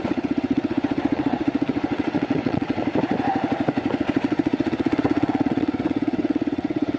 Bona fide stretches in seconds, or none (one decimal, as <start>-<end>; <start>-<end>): 2.8-4.0

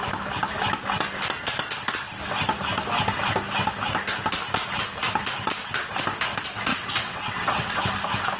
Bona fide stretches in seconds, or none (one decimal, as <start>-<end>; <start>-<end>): 0.0-6.7; 7.8-8.4

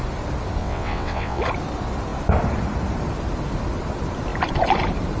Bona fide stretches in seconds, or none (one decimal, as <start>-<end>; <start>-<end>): 0.0-0.6; 1.4-5.2

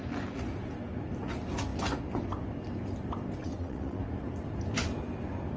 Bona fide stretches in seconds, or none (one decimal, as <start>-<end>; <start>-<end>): 0.0-3.4; 4.0-5.6

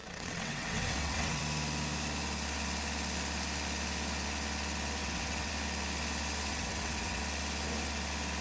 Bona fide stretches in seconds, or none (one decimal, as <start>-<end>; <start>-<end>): 1.4-5.0; 5.5-6.5; 7.2-8.4

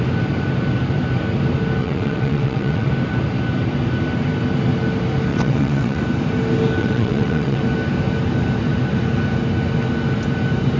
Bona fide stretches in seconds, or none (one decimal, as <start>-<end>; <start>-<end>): 0.0-1.8; 2.9-5.3; 6.0-6.8; 7.6-10.8

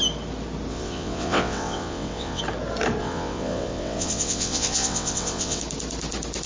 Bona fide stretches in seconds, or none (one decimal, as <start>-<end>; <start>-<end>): 0.0-0.7; 2.4-3.0; 5.6-6.5

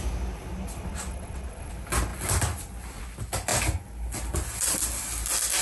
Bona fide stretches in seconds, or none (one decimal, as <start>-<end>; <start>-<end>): 0.0-0.9; 1.7-5.6